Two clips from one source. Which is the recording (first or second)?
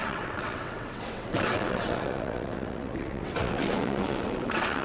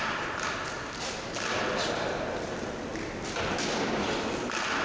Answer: second